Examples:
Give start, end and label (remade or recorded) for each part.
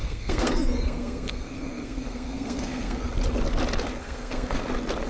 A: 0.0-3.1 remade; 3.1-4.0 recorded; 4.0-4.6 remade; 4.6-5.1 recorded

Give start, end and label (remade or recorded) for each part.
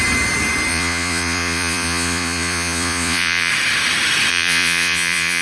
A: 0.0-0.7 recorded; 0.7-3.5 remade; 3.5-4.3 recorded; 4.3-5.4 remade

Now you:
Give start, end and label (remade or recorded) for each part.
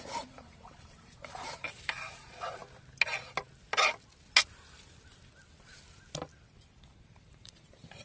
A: 0.0-2.6 remade; 2.6-6.9 recorded; 6.9-8.0 remade